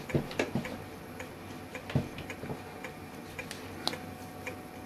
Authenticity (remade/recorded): recorded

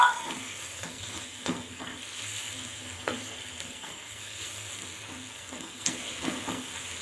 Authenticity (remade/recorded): remade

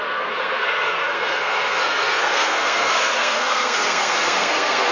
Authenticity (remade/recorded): remade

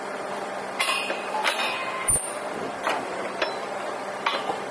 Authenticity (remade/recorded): recorded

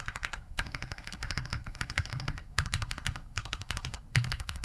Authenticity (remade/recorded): remade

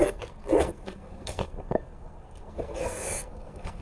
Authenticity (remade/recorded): remade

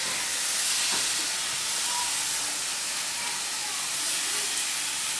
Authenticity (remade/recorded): recorded